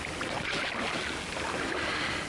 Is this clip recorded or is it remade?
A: recorded